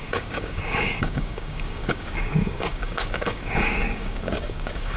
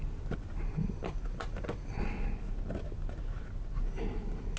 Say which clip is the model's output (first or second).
first